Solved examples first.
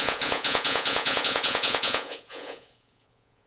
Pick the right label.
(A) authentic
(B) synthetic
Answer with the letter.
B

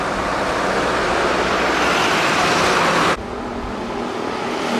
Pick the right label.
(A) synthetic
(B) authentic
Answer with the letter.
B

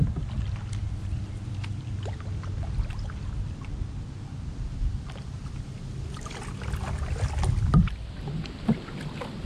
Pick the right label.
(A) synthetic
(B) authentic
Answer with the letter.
B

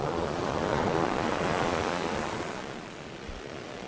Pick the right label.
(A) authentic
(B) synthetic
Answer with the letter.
B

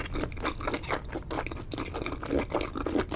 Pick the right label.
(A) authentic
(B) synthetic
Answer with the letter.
A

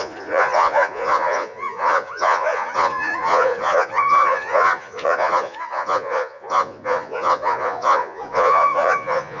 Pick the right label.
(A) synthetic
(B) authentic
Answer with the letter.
A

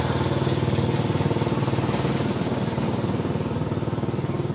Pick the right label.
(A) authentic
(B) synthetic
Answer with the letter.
A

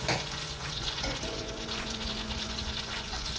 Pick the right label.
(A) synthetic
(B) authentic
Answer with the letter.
A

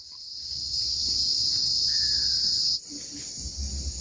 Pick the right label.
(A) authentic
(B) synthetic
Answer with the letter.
A